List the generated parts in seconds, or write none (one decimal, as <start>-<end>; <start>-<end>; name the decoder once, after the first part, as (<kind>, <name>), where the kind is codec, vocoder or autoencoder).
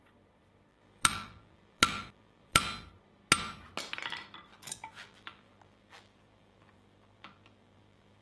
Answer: 0.7-2.9 (vocoder, BigVGAN v2); 4.5-8.2